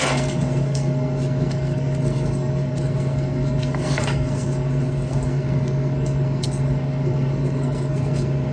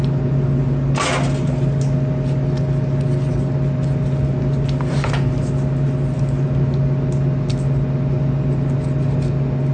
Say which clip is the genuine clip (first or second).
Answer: second